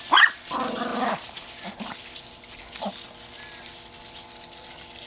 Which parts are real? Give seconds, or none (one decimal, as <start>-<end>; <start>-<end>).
0.0-5.1